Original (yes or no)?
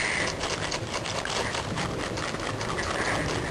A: yes